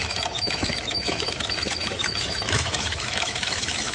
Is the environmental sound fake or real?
fake